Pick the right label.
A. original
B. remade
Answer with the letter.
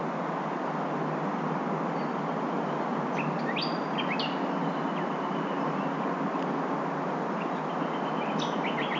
A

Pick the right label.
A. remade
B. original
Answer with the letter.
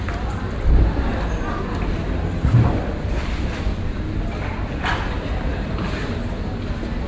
B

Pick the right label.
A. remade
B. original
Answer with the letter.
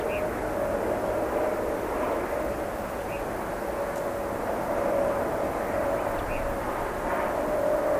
B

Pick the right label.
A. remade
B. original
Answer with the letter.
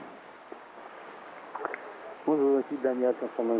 A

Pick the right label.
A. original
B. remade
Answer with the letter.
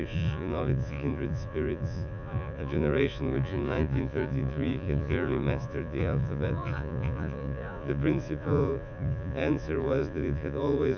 B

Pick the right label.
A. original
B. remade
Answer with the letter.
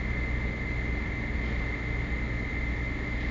A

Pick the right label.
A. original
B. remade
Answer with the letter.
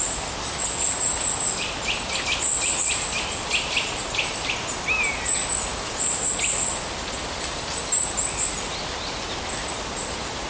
A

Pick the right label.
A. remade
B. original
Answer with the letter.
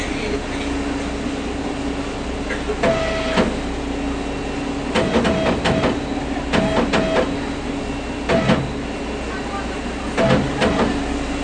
B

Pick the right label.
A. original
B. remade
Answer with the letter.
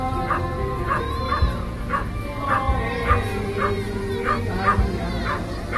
A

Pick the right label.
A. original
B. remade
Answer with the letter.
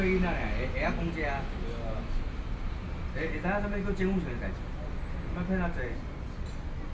A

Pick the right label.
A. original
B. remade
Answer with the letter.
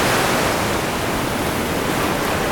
A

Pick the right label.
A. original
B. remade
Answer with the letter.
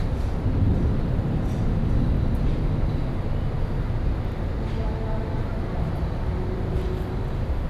A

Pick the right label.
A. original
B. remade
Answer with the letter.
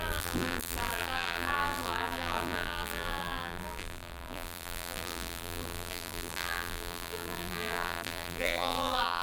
B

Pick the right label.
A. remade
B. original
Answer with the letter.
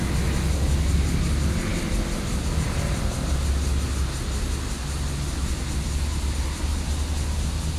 B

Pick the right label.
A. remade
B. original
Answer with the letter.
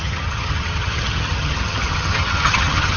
A